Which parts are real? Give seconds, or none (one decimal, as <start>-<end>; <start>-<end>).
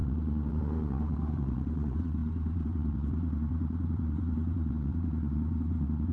none